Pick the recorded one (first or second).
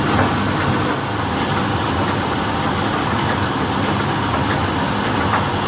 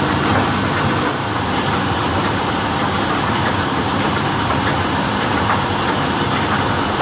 first